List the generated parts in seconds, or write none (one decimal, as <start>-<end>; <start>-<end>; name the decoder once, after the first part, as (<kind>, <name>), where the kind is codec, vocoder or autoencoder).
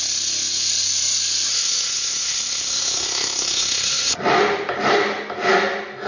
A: 1.5-4.2 (codec, SNAC)